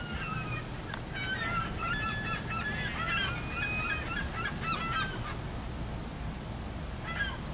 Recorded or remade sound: recorded